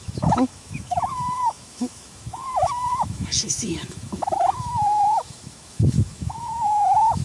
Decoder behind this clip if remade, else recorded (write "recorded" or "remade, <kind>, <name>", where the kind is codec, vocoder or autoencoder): remade, autoencoder, DAC-VAE